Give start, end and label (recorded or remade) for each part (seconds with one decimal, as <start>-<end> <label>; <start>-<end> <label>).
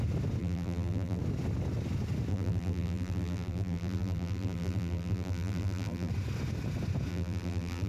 0.0-0.4 recorded; 0.4-1.2 remade; 1.2-2.3 recorded; 2.3-6.1 remade; 6.1-7.1 recorded; 7.1-7.9 remade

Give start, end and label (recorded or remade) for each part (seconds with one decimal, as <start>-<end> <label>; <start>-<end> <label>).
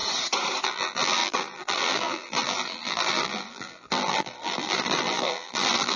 0.0-0.6 recorded; 0.6-6.0 remade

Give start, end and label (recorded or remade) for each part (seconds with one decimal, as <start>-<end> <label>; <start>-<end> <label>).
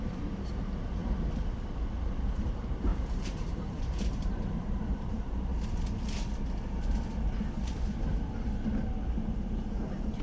0.0-1.0 remade; 1.0-2.4 recorded; 2.4-5.5 remade; 5.5-9.2 recorded; 9.2-10.2 remade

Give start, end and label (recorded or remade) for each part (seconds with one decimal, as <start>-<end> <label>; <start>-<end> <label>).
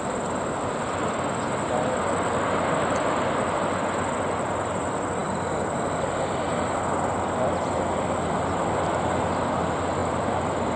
0.0-10.0 recorded; 10.0-10.8 remade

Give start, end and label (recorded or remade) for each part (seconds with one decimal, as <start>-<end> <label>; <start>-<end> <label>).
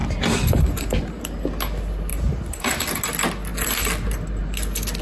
0.0-1.2 remade; 1.2-2.1 recorded; 2.1-3.0 remade; 3.0-5.0 recorded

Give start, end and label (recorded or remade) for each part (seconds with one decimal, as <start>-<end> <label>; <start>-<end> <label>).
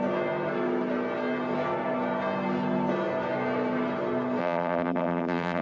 0.0-4.4 recorded; 4.4-5.6 remade